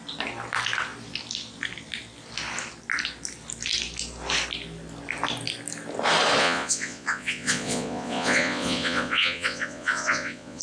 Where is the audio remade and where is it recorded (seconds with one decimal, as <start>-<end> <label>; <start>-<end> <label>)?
0.0-6.4 recorded; 6.4-10.6 remade